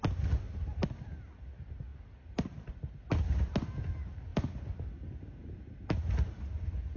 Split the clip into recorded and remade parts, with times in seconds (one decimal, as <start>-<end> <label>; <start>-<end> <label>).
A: 0.0-7.0 recorded